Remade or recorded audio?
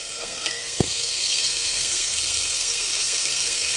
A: remade